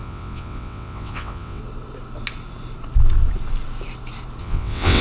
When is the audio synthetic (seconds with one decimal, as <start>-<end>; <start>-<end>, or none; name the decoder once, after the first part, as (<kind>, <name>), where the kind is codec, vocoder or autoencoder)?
0.0-1.6 (vocoder, WaveNeXt); 4.4-5.0